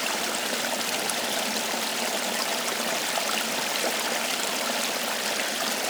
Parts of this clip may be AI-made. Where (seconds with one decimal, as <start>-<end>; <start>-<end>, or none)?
none